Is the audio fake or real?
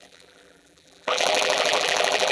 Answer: fake